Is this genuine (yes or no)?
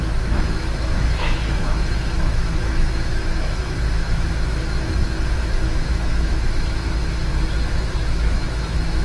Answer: no